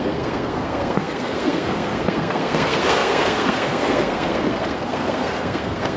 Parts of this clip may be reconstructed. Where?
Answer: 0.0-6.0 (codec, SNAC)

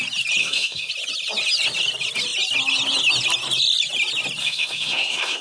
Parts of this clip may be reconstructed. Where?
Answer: 0.4-0.9 (codec, SNAC); 4.4-5.4

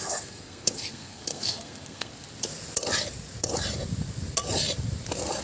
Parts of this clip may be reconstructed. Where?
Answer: 0.0-2.1 (codec, SNAC)

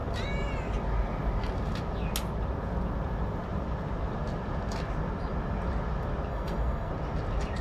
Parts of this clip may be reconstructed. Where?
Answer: 6.3-6.9 (codec, SNAC)